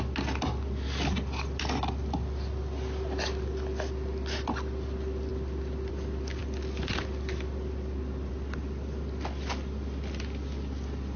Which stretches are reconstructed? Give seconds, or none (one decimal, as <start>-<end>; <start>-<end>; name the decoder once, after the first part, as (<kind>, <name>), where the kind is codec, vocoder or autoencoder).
none